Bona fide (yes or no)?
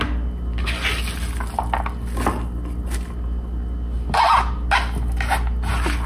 yes